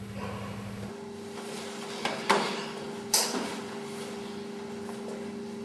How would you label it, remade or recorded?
recorded